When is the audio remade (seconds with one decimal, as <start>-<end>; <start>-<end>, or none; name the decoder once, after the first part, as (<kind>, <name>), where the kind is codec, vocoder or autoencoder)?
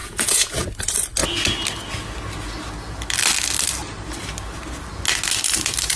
0.0-0.5 (vocoder, Vocos)